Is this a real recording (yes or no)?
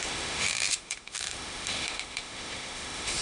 no